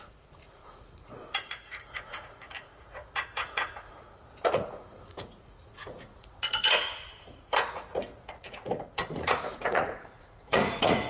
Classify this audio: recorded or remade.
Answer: remade